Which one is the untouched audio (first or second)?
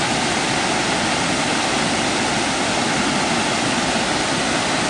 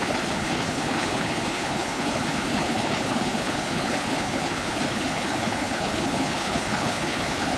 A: first